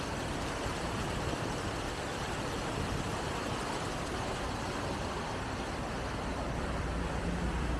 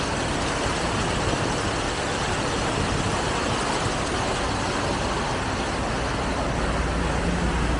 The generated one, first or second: first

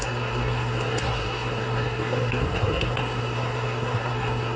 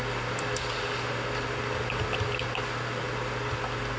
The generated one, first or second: first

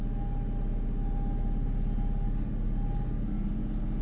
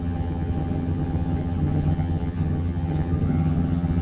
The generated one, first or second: second